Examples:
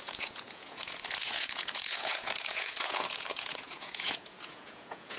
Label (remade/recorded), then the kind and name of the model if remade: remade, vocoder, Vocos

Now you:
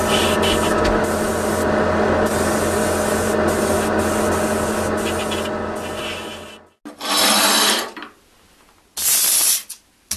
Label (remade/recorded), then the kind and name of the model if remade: recorded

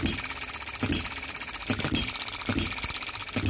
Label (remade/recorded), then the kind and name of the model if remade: recorded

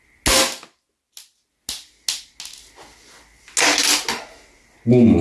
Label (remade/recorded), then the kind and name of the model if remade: recorded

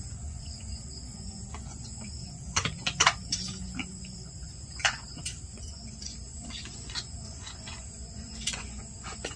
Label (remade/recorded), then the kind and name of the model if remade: remade, vocoder, Vocos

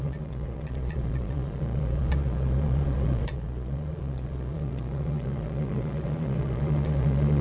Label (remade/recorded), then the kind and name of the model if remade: remade, vocoder, Vocos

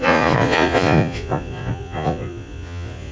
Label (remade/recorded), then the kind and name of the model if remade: remade, vocoder, Vocos